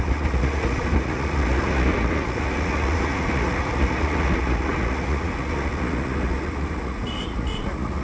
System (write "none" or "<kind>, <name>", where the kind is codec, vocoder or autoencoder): vocoder, Vocos